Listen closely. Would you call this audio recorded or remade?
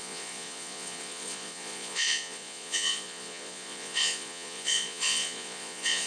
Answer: remade